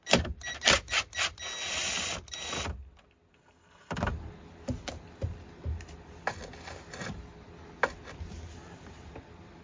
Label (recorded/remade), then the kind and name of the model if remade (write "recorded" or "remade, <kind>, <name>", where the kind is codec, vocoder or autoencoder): recorded